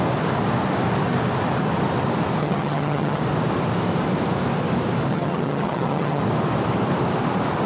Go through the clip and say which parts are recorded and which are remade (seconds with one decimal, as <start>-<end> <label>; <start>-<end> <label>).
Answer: 0.0-2.4 recorded; 2.4-3.2 remade; 3.2-5.1 recorded; 5.1-6.2 remade; 6.2-7.7 recorded

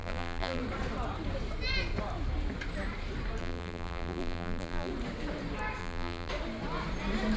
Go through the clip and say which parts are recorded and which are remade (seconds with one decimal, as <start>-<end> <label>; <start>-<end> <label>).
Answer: 0.0-0.6 remade; 0.6-3.4 recorded; 3.4-4.9 remade; 4.9-5.8 recorded; 5.8-6.3 remade; 6.3-7.4 recorded